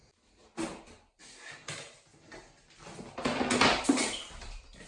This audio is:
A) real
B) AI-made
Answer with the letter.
A